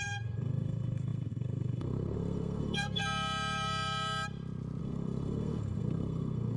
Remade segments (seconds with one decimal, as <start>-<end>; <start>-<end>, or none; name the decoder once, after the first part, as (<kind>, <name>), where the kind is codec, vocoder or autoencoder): 0.0-3.0 (codec, SNAC); 4.8-6.6